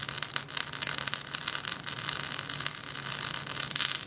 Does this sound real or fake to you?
real